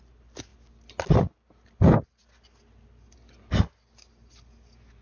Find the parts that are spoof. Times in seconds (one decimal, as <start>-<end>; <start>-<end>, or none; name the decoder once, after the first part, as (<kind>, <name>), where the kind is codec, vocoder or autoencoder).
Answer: none